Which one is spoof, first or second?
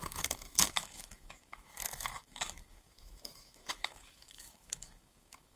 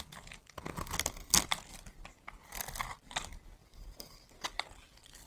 first